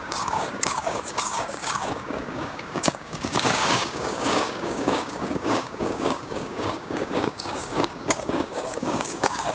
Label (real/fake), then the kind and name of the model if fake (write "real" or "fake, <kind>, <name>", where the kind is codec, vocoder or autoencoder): fake, codec, DAC